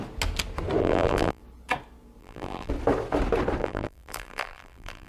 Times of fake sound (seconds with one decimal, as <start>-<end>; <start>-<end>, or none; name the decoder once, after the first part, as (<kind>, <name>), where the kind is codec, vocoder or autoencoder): 0.8-1.4 (vocoder, BigVGAN v2); 2.2-2.7; 3.6-5.1